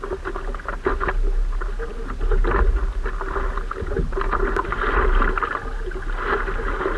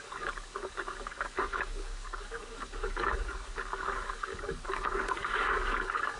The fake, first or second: second